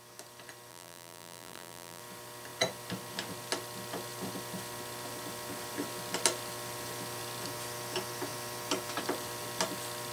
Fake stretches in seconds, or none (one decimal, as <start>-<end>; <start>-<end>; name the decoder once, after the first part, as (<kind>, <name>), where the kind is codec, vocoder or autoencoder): 0.7-2.0 (vocoder, BigVGAN v2)